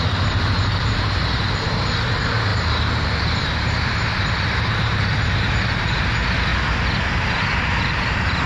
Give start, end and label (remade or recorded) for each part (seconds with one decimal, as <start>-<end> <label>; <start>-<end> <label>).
0.0-6.5 remade; 6.5-7.8 recorded; 7.8-8.5 remade